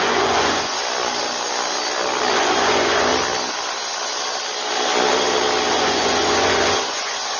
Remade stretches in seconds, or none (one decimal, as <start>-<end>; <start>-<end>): 0.0-0.8; 2.3-3.1; 5.7-7.4